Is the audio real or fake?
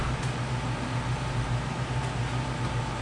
fake